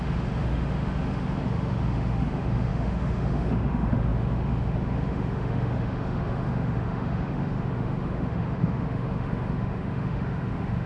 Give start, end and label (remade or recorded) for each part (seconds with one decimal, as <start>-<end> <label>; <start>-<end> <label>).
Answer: 0.0-10.9 remade